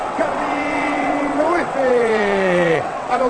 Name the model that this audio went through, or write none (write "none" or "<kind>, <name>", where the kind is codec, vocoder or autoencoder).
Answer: vocoder, WaveNeXt